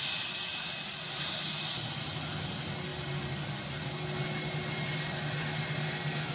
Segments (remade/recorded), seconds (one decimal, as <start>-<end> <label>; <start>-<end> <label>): 0.0-6.3 recorded